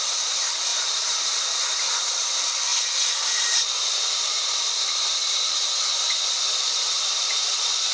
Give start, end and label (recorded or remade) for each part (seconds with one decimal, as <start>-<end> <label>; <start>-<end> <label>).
0.0-0.7 recorded; 0.7-1.6 remade; 1.6-7.9 recorded